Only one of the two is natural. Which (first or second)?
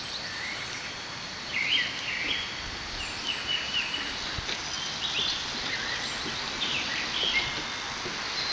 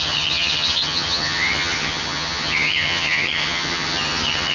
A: first